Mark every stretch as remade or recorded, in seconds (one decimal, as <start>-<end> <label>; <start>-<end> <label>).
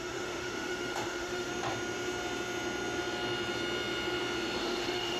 0.0-1.5 remade; 1.5-4.6 recorded; 4.6-5.2 remade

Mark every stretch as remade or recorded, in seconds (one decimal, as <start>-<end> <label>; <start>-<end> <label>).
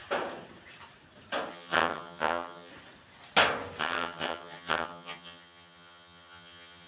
0.0-1.5 recorded; 1.5-2.7 remade; 2.7-3.8 recorded; 3.8-6.9 remade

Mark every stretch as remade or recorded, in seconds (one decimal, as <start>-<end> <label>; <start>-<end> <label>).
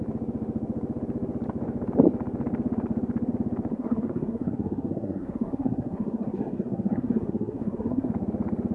0.0-3.7 recorded; 3.7-8.1 remade; 8.1-8.7 recorded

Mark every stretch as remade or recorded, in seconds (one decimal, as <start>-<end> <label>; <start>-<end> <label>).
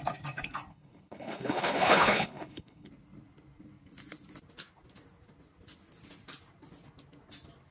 0.0-0.7 recorded; 0.7-2.9 remade; 2.9-7.7 recorded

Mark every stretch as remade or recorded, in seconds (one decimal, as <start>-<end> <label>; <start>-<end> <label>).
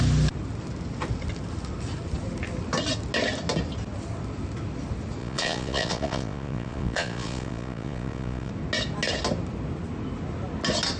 0.0-5.2 recorded; 5.2-8.5 remade; 8.5-11.0 recorded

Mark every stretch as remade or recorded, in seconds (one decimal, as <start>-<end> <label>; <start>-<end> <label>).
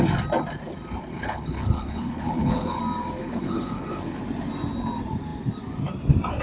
0.0-1.1 recorded; 1.1-2.8 remade; 2.8-3.2 recorded; 3.2-4.2 remade; 4.2-6.4 recorded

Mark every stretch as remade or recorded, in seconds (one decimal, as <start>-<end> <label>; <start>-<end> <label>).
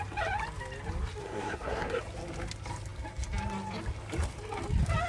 0.0-1.2 recorded; 1.2-2.0 remade; 2.0-5.1 recorded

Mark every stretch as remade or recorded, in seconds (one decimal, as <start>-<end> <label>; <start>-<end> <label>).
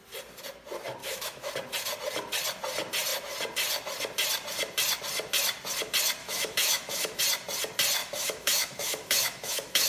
0.0-1.0 recorded; 1.0-1.5 remade; 1.5-6.2 recorded; 6.2-7.2 remade; 7.2-8.0 recorded; 8.0-9.9 remade